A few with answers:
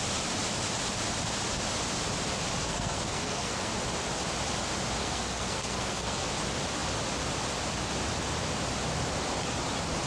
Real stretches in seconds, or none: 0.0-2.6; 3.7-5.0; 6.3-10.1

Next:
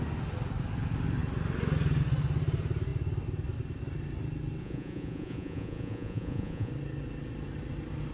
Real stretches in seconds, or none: 0.0-4.6; 6.7-8.1

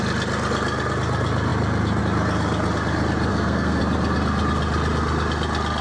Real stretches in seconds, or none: 0.0-3.3; 3.8-5.8

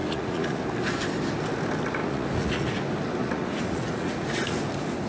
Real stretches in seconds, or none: 0.6-2.0; 2.8-3.2; 4.6-5.1

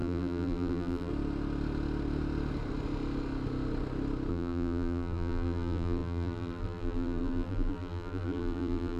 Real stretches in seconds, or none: 1.1-4.3

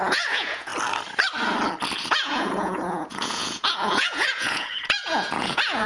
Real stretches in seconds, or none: 0.7-2.1